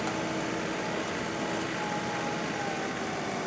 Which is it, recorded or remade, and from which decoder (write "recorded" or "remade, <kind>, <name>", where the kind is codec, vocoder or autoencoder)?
recorded